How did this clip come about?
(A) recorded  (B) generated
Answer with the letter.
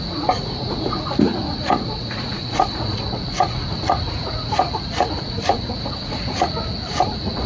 B